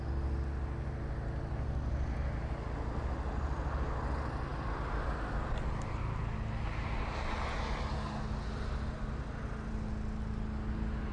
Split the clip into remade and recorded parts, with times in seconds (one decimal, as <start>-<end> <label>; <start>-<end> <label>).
0.0-11.1 recorded